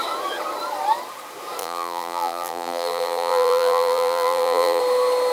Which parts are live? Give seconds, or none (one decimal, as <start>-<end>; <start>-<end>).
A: 0.0-1.6; 4.8-5.3